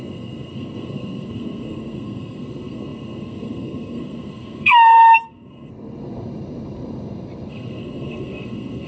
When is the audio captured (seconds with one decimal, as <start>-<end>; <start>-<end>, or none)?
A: 5.7-7.5